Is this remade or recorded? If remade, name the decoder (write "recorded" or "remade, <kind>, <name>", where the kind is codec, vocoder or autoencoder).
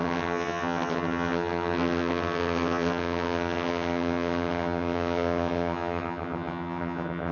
remade, vocoder, HiFi-GAN